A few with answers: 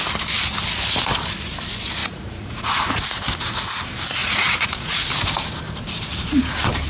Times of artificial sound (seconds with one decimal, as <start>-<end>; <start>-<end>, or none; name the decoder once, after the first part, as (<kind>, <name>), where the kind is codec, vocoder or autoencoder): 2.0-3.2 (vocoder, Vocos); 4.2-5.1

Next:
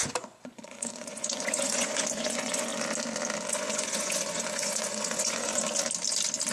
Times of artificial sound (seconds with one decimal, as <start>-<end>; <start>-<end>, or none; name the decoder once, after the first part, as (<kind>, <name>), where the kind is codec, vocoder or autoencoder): 0.0-2.7 (vocoder, Vocos); 3.5-5.6

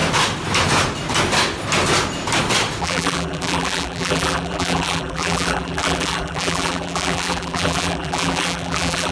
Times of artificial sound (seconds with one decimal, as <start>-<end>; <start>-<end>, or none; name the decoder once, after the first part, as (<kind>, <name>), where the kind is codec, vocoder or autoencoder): 2.8-9.1 (vocoder, BigVGAN v2)

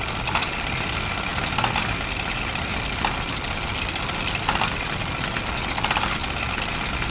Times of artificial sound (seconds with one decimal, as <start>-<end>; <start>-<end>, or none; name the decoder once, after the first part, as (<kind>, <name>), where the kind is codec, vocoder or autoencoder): none